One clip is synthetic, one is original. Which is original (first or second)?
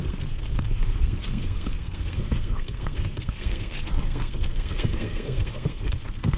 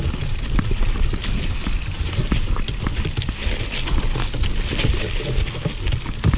second